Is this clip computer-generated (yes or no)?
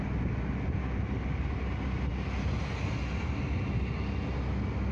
no